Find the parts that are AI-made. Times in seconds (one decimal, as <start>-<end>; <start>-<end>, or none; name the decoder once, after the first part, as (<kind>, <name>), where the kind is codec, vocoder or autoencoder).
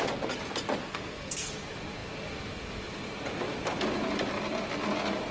0.8-1.5 (codec, SNAC)